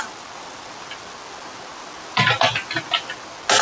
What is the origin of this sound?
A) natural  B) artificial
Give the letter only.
A